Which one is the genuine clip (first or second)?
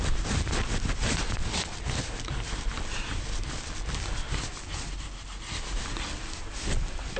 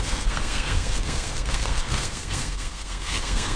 first